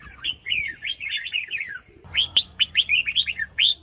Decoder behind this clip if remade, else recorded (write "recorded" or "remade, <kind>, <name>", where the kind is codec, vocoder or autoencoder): remade, vocoder, Vocos